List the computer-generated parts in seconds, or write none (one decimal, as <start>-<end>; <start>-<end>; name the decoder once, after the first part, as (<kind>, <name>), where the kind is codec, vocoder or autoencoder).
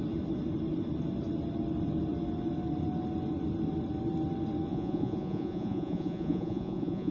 4.7-7.1 (vocoder, Vocos)